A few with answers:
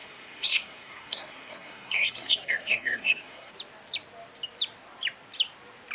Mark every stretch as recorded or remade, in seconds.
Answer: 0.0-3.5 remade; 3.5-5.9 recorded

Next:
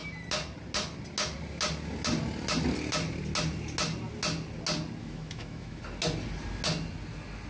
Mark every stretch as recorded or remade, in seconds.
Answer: 0.0-5.0 recorded; 5.0-5.8 remade; 5.8-7.5 recorded

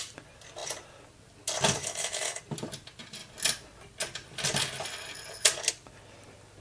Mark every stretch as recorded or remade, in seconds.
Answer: 0.0-1.8 recorded; 1.8-2.4 remade; 2.4-6.6 recorded

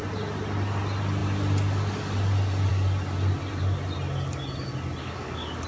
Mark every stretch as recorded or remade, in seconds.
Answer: 0.0-5.0 recorded; 5.0-5.7 remade

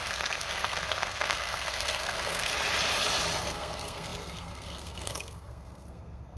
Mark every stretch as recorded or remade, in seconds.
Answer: 0.0-2.5 remade; 2.5-3.4 recorded; 3.4-6.4 remade

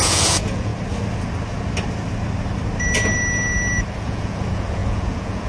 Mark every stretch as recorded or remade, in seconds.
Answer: 0.0-0.7 remade; 0.7-4.0 recorded; 4.0-5.5 remade